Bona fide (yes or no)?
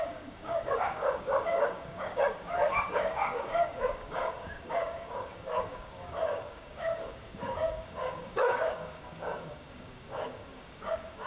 no